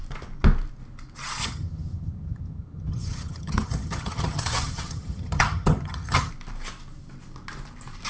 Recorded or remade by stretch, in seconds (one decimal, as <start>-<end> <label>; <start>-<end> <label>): 0.0-1.4 recorded; 1.4-6.3 remade; 6.3-8.1 recorded